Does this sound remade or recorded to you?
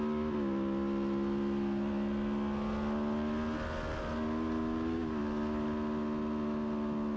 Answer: recorded